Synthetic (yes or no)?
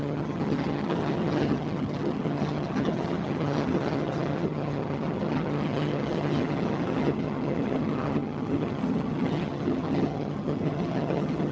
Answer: yes